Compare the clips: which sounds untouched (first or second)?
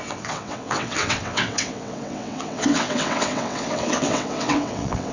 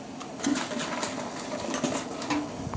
second